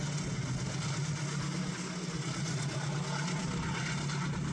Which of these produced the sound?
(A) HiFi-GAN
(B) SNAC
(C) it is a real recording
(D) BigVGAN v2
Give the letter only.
C